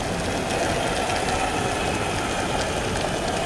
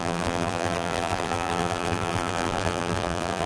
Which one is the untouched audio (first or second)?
first